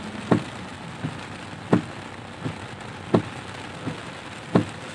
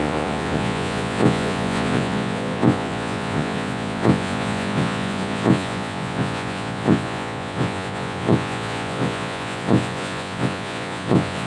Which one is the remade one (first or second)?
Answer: second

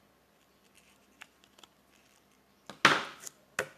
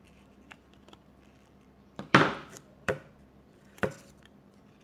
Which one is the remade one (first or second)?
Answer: second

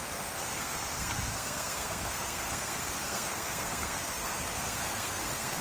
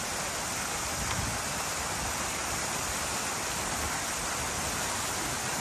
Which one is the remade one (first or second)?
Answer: first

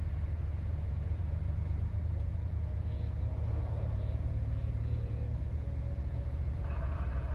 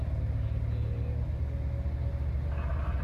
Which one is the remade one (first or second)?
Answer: first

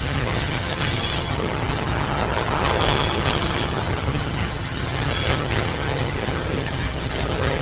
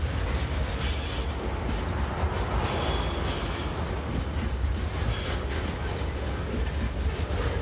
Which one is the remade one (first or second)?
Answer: first